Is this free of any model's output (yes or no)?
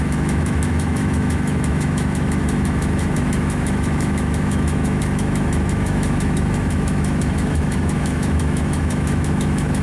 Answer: no